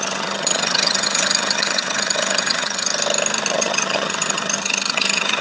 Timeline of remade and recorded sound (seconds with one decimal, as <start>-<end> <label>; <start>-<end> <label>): 0.0-2.9 remade; 2.9-3.5 recorded; 3.5-5.4 remade